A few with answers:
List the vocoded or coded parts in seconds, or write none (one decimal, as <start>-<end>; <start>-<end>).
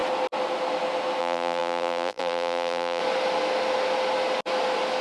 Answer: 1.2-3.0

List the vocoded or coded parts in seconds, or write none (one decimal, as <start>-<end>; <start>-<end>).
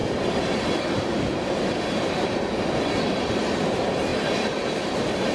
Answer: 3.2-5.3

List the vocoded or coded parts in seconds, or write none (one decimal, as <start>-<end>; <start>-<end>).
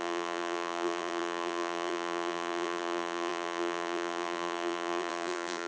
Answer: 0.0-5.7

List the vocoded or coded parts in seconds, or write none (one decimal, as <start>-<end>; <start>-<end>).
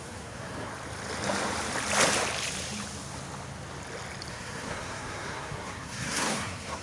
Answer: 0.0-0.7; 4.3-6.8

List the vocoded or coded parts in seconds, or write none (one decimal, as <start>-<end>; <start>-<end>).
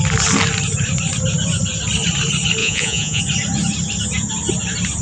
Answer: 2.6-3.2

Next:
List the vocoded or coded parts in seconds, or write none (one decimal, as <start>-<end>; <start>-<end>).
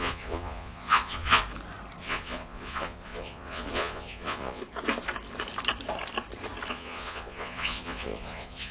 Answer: 0.0-1.4; 2.0-4.6; 6.7-8.7